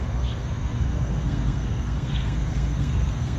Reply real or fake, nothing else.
fake